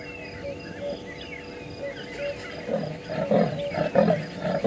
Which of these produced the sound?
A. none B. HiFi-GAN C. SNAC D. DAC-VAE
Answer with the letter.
A